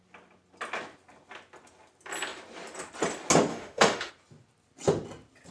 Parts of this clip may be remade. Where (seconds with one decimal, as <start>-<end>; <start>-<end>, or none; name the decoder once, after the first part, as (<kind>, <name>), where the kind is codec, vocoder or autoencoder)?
3.5-4.1 (autoencoder, DAC-VAE)